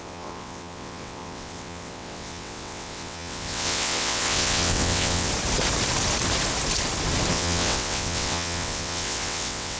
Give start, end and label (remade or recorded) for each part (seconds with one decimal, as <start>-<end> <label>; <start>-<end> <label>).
0.0-5.3 remade; 5.3-7.3 recorded; 7.3-9.8 remade